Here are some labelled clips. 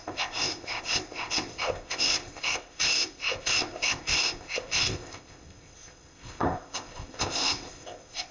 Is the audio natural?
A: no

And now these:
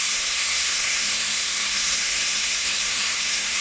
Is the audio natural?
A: no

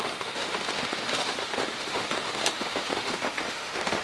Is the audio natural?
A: no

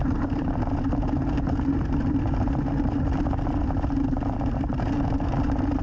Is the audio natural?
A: no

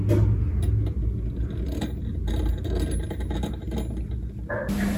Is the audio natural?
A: yes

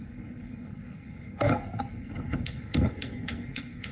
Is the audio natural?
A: no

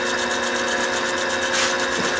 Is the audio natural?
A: yes